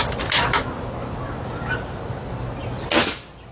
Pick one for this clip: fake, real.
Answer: real